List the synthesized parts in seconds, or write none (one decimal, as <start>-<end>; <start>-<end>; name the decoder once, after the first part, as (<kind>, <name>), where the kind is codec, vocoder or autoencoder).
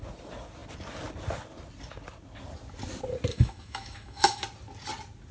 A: 3.3-4.4 (autoencoder, DAC-VAE)